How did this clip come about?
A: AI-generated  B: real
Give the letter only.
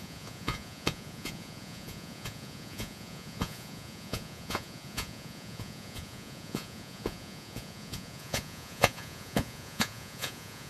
A